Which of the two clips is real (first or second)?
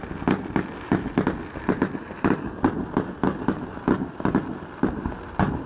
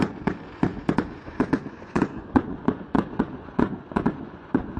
first